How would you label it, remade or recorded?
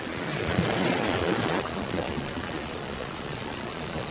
remade